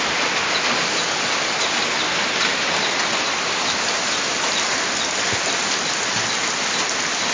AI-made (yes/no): no